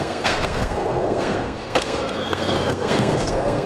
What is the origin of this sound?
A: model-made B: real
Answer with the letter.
A